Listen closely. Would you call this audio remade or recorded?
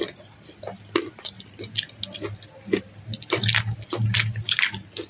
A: recorded